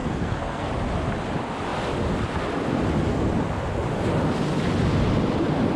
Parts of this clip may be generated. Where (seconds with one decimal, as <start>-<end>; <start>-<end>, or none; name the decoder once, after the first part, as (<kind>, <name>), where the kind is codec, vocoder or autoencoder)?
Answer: 0.0-0.7 (codec, SNAC)